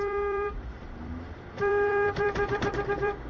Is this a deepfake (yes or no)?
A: yes